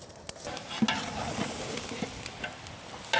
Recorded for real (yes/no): yes